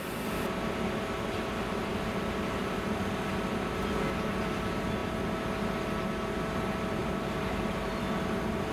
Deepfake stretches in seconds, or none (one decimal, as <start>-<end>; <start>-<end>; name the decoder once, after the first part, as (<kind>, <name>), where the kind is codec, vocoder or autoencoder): 7.0-8.0 (vocoder, BigVGAN v2)